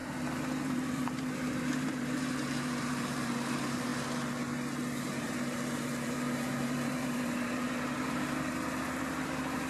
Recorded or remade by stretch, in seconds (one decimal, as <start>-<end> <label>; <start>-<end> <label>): 0.0-0.6 recorded; 0.6-3.9 remade; 3.9-5.0 recorded; 5.0-9.7 remade